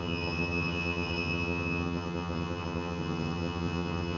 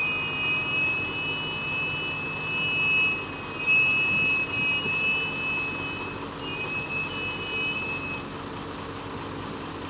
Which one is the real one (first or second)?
second